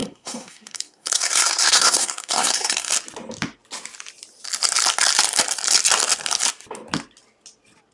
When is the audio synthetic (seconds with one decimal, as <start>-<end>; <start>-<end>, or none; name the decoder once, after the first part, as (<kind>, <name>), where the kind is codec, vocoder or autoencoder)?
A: 0.0-2.9 (codec, SNAC)